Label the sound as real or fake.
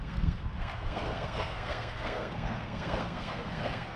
fake